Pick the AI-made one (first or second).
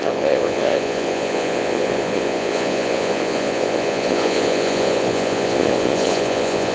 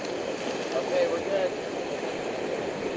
first